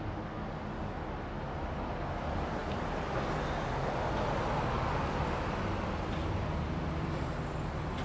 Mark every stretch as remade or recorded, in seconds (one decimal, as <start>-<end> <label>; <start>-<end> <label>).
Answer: 0.0-8.0 recorded